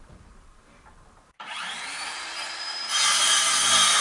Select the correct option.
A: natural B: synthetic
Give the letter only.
B